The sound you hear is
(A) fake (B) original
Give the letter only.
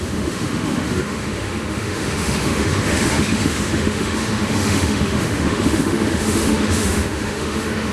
A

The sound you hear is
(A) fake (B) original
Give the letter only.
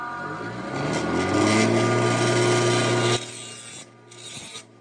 B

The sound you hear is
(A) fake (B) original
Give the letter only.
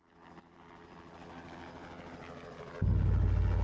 B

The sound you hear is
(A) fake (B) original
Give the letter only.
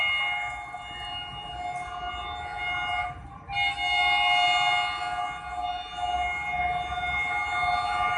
B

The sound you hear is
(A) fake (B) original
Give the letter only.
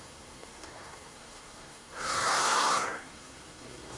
A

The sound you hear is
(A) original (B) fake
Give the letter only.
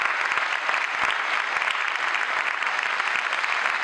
A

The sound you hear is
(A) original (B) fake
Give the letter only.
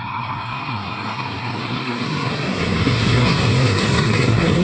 B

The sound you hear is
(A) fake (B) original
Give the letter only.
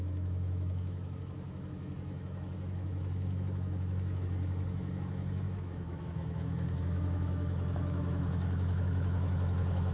A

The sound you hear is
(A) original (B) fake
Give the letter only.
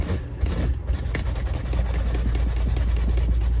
A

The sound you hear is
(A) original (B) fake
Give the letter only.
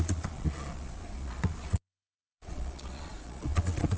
B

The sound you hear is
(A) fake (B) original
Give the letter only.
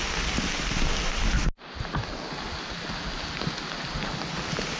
B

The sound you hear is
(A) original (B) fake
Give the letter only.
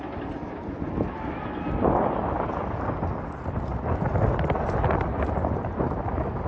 A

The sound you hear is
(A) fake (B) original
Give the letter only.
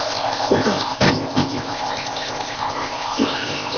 A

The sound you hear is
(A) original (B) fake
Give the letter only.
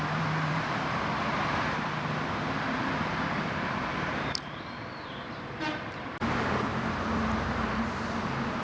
B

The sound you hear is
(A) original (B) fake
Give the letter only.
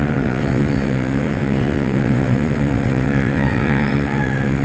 B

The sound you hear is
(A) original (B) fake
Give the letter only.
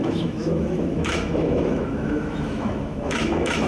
B